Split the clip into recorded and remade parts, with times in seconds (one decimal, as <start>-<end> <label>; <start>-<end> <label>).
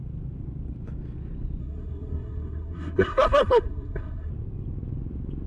0.0-1.6 recorded; 1.6-4.3 remade; 4.3-5.5 recorded